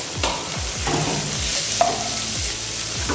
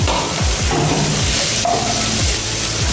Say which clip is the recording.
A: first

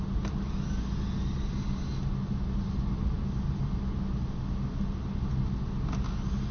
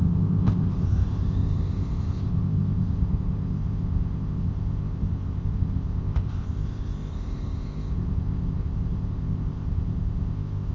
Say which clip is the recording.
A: first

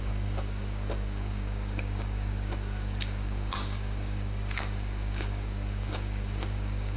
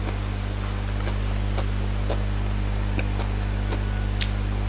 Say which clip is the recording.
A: second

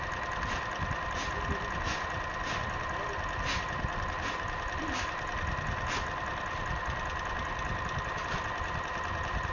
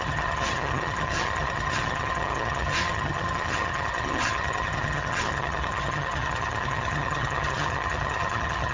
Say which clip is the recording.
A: first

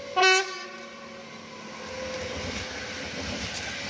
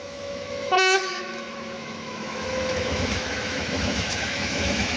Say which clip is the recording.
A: first